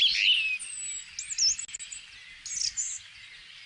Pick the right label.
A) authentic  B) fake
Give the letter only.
A